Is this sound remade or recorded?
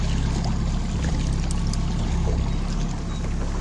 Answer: recorded